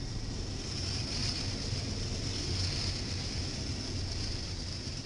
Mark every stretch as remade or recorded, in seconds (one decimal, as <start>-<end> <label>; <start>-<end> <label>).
0.0-1.2 remade; 1.2-4.3 recorded; 4.3-5.1 remade